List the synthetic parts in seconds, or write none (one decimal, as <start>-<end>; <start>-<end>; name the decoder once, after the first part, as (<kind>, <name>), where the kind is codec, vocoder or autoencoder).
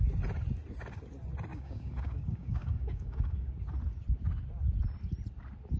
1.5-3.5 (codec, DAC)